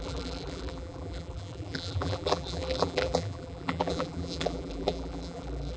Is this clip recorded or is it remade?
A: remade